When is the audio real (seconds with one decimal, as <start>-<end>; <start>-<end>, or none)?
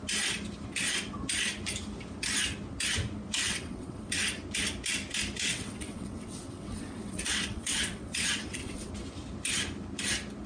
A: 0.0-3.5; 4.1-5.5; 8.9-10.5